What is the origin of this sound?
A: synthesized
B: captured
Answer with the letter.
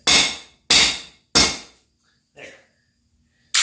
B